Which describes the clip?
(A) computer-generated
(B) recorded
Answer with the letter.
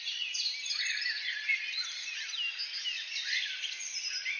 B